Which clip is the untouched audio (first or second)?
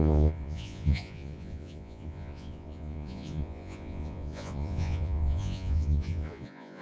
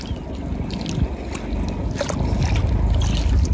second